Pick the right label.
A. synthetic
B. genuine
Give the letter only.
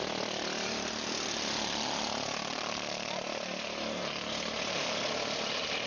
B